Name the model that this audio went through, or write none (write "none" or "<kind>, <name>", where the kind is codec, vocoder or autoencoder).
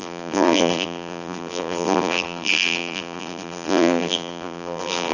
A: vocoder, BigVGAN v2